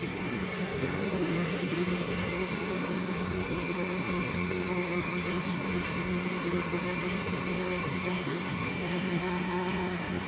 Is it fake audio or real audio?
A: fake